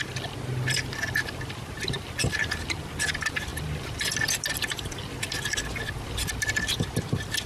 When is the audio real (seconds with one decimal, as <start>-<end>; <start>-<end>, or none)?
0.0-7.5